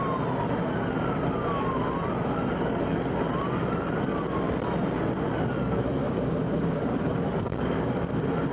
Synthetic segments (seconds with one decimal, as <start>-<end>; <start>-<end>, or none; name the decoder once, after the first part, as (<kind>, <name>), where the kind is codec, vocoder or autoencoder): 6.0-7.9 (codec, DAC)